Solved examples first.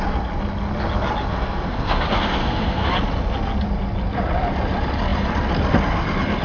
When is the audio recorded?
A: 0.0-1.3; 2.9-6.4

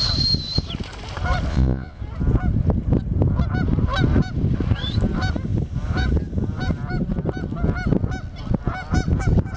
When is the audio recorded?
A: 0.0-1.5; 2.0-9.6

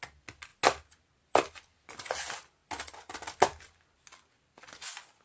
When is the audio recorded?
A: 0.0-5.2

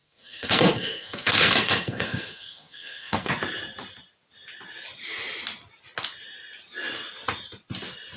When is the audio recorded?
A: 3.3-8.2

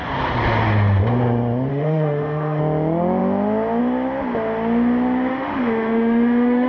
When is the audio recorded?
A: 0.0-1.7; 2.6-5.3

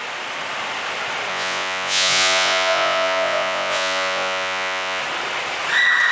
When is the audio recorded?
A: 0.0-1.3; 5.0-6.1

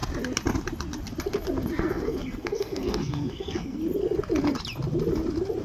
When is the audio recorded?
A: 0.0-1.8; 3.8-5.6

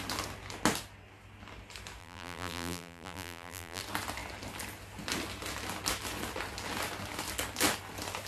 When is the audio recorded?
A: 0.0-2.0; 3.8-8.3